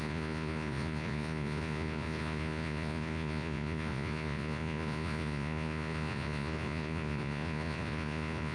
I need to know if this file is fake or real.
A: fake